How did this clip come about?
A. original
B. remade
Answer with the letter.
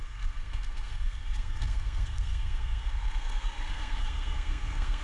B